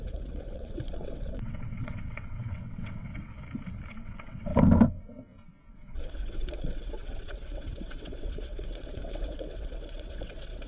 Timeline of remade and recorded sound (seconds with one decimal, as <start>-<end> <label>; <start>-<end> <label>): 0.0-3.3 remade; 3.3-3.9 recorded; 3.9-4.5 remade; 4.5-5.7 recorded; 5.7-10.7 remade